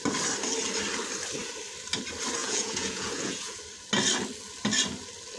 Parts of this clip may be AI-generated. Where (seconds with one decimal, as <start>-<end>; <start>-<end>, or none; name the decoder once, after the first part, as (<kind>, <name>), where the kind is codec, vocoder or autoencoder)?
2.4-3.6 (vocoder, Vocos)